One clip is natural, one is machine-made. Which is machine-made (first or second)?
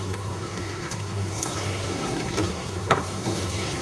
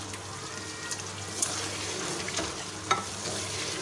first